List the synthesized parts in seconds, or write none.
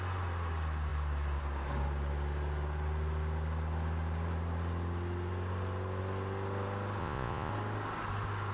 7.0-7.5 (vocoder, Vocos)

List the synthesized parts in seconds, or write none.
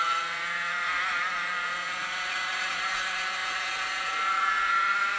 0.0-5.2 (vocoder, Vocos)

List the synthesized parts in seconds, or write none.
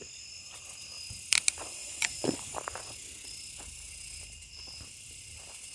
1.8-2.5 (vocoder, Vocos)